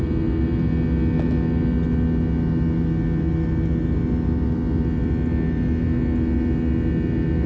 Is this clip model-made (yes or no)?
no